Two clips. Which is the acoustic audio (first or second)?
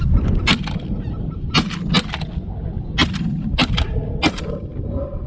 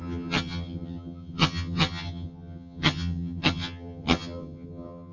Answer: first